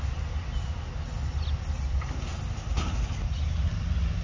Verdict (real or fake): real